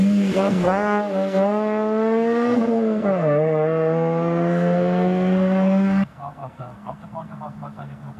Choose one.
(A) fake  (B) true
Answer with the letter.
A